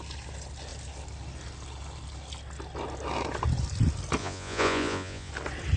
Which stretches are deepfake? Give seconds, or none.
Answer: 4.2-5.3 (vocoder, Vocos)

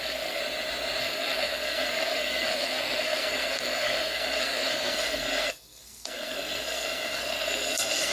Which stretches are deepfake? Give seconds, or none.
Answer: 0.0-0.4 (codec, SNAC); 1.0-8.1

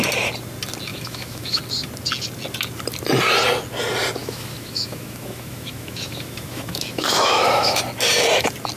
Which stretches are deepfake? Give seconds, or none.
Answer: 0.9-1.6 (autoencoder, DAC-VAE); 4.2-7.8

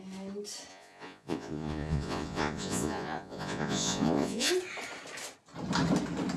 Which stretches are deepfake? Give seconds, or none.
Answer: 0.7-4.5 (vocoder, Vocos)

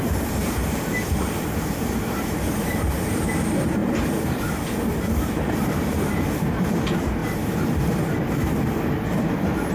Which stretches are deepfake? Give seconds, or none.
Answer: 0.0-7.2 (vocoder, BigVGAN v2)

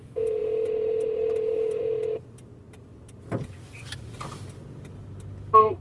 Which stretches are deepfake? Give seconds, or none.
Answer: none